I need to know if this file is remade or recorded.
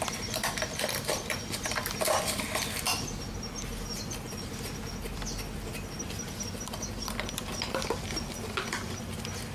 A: recorded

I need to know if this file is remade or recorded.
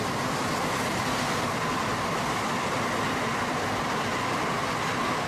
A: recorded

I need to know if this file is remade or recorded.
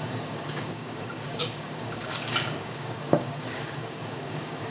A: remade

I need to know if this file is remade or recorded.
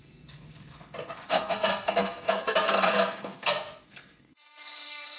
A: remade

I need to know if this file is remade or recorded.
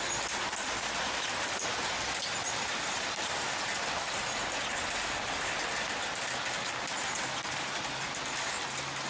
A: recorded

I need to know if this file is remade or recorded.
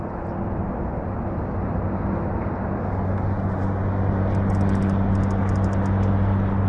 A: recorded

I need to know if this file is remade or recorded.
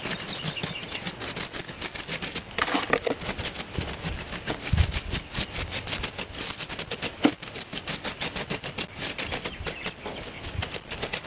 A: recorded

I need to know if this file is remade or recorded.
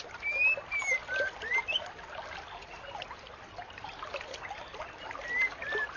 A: recorded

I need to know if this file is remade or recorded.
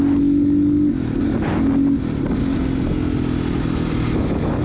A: recorded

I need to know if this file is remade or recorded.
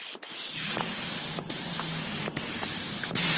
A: recorded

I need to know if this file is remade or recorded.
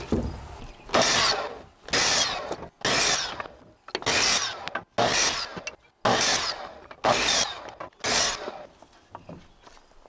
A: recorded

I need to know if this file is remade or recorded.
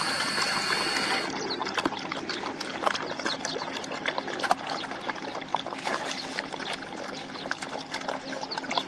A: recorded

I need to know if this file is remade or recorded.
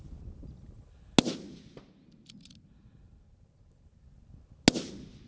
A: recorded